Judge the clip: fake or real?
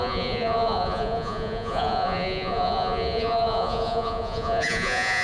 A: fake